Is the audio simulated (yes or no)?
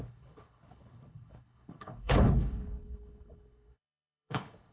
yes